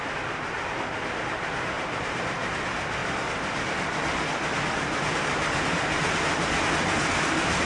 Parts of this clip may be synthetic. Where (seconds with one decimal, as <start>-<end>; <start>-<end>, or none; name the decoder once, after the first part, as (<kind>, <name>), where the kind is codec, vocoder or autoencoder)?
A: none